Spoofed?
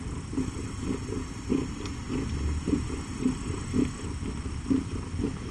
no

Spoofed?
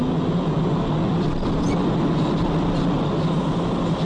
no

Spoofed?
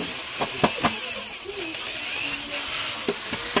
no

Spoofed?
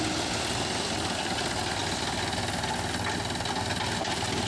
no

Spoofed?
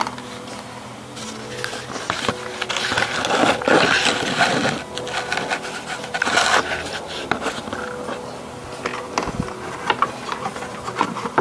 no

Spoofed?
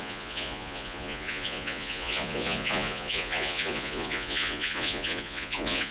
yes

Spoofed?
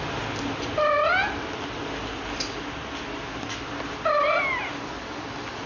no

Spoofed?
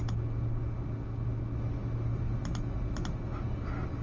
no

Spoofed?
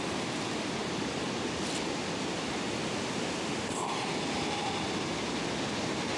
no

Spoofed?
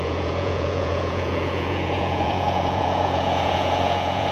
yes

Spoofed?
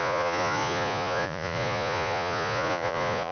yes